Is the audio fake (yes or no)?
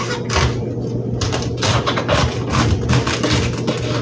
no